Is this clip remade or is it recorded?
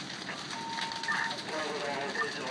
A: remade